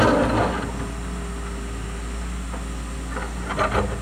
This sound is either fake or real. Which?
real